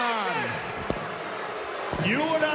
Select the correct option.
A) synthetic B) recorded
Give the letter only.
B